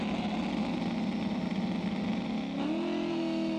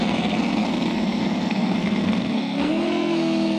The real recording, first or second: first